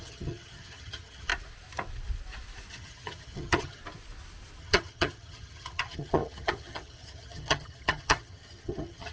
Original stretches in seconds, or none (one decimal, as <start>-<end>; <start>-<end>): 1.3-2.7; 3.8-4.6